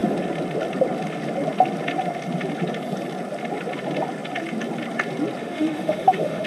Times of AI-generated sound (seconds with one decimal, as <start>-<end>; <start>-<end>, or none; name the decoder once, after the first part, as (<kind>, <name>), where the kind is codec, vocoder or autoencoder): 5.4-6.5 (autoencoder, DAC-VAE)